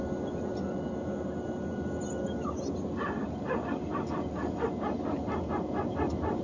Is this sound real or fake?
real